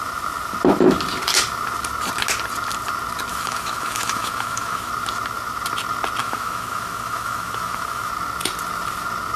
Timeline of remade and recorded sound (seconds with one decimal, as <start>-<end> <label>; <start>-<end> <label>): 0.0-3.3 recorded; 3.3-4.9 remade; 4.9-6.2 recorded; 6.2-8.1 remade; 8.1-9.4 recorded